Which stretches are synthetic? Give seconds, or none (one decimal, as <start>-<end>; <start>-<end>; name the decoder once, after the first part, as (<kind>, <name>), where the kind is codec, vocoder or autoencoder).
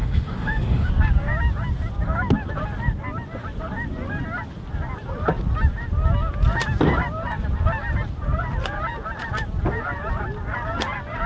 0.0-0.9 (autoencoder, DAC-VAE)